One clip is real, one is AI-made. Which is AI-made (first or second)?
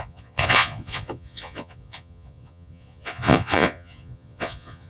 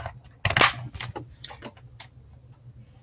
first